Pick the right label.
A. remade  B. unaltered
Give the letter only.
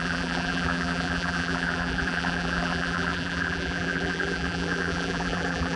A